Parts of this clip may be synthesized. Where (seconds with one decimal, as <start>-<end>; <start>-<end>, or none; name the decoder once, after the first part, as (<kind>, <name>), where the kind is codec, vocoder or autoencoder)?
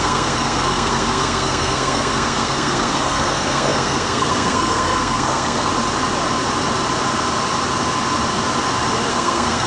0.0-5.7 (codec, SNAC); 9.1-9.7